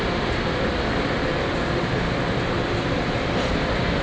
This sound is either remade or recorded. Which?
recorded